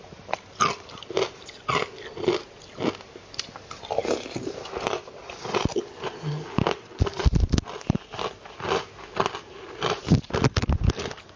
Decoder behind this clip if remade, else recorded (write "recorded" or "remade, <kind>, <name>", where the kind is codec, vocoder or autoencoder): recorded